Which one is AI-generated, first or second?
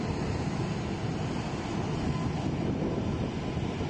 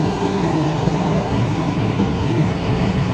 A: second